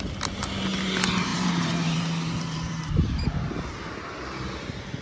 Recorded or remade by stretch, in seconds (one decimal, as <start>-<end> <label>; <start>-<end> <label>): 0.0-1.3 recorded; 1.3-3.2 remade; 3.2-5.0 recorded